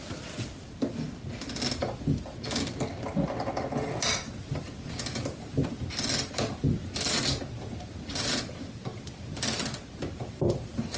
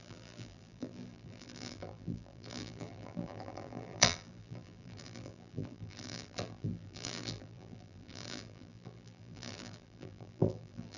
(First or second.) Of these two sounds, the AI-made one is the second